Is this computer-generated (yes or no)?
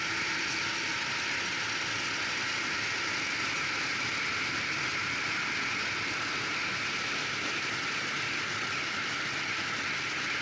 no